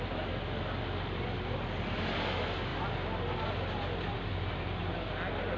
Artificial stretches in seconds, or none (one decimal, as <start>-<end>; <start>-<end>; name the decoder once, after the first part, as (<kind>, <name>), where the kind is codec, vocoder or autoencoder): none